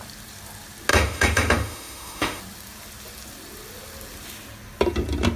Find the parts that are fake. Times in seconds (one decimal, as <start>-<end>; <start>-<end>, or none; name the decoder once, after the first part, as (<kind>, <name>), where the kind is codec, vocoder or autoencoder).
0.9-2.4 (autoencoder, DAC-VAE)